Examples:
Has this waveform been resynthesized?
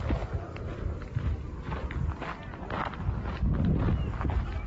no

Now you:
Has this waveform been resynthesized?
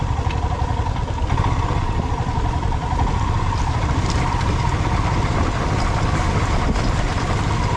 no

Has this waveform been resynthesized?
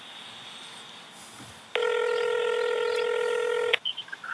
no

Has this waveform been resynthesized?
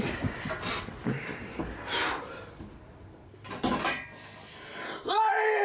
no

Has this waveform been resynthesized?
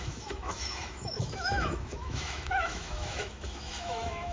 yes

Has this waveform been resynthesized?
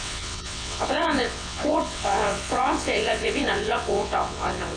yes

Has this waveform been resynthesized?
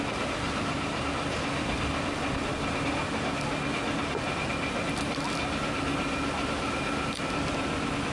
no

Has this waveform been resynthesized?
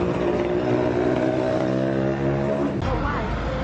no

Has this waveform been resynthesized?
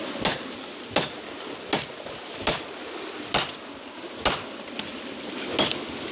no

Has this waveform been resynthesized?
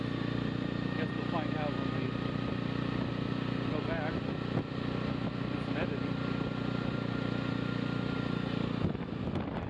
no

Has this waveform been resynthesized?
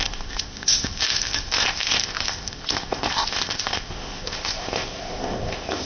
yes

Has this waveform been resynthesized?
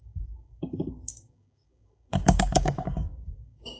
yes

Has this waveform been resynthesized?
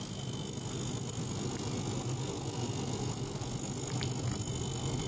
no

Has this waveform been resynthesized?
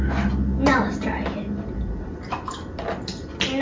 no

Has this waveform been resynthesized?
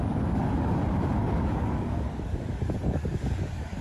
yes